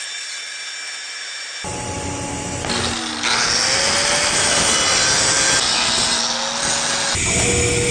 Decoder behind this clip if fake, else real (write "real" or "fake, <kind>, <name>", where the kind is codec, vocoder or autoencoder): real